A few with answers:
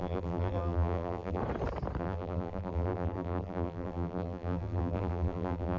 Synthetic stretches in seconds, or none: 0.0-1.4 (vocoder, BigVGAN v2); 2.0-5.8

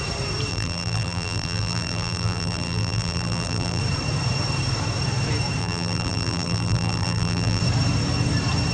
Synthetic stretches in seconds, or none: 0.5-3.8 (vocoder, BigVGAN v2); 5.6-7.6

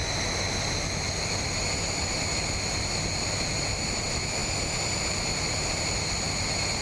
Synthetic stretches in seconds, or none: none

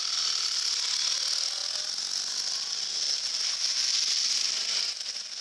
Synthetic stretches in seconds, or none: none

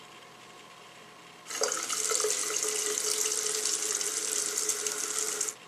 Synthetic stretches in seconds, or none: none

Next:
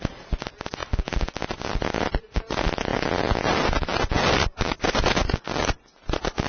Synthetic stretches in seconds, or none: none